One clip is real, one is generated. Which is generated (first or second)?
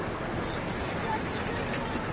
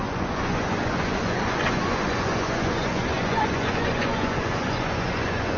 second